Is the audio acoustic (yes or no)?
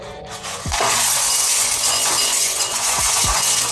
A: no